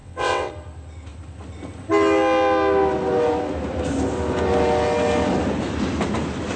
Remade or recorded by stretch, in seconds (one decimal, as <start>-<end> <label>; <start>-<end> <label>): 0.0-0.5 remade; 0.5-6.6 recorded